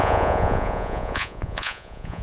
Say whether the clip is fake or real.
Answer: fake